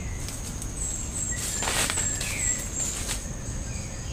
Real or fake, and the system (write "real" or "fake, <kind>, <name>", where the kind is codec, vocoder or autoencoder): real